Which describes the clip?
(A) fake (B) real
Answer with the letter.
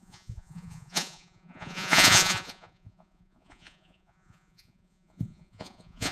A